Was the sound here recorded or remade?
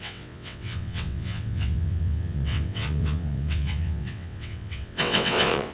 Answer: remade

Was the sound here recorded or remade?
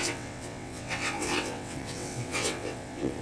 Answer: remade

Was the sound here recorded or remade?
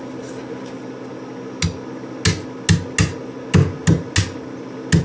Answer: recorded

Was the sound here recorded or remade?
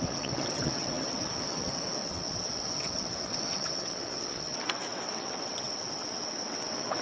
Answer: remade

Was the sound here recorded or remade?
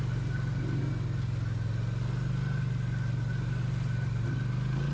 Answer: recorded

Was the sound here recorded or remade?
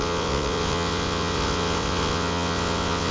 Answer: remade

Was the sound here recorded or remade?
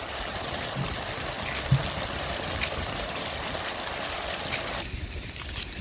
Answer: recorded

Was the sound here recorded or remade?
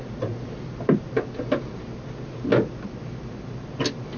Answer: recorded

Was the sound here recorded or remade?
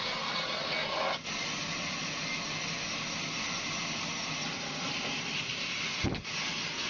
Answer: recorded